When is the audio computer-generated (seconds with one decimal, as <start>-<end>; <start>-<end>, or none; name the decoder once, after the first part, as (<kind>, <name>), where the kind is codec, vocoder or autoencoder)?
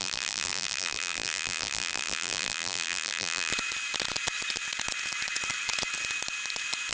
0.0-3.5 (vocoder, BigVGAN v2)